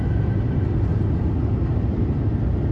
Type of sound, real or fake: real